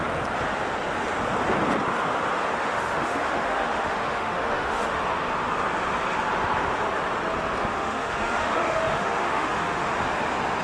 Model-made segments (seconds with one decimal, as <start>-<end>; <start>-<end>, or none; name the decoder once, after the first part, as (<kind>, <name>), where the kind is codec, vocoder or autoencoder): 2.6-5.0 (autoencoder, DAC-VAE); 7.6-9.9